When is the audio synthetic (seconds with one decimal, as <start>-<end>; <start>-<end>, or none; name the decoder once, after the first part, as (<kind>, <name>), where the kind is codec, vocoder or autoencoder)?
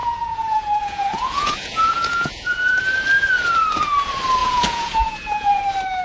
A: 0.0-2.8 (vocoder, Vocos); 4.4-5.6